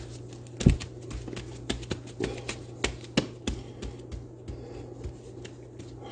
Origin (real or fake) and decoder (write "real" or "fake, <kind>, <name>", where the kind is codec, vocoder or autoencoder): real